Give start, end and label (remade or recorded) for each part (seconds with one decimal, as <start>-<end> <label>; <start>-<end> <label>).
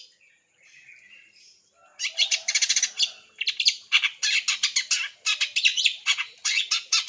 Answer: 0.0-5.7 recorded; 5.7-7.1 remade